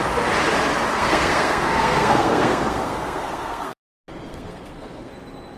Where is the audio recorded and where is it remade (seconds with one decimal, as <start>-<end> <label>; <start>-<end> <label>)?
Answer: 0.0-0.9 recorded; 0.9-3.8 remade; 3.8-4.3 recorded; 4.3-5.1 remade; 5.1-5.6 recorded